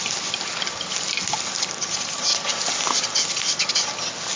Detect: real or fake real